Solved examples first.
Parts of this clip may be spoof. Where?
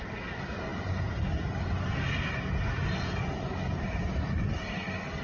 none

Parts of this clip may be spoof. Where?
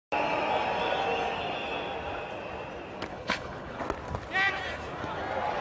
3.1-3.8